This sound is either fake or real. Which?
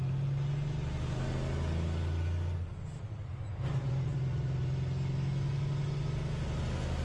real